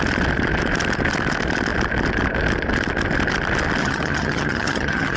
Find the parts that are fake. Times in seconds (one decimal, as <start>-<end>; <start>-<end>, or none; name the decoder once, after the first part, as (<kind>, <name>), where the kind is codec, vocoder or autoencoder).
3.8-5.2 (vocoder, HiFi-GAN)